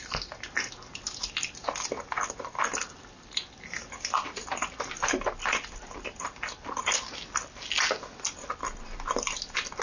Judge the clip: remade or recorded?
recorded